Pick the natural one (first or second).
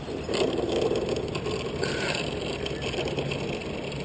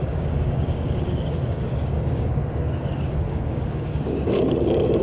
first